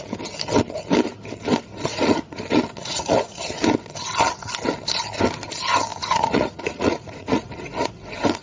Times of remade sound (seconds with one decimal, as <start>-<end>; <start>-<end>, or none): 1.9-2.4; 2.8-3.4; 5.9-7.9